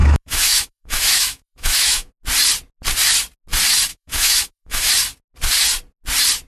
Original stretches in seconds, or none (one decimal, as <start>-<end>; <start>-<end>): 2.1-3.9; 4.9-6.5